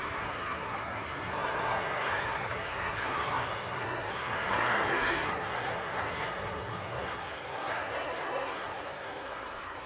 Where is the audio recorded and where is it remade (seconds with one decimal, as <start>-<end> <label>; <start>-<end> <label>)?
0.0-9.9 remade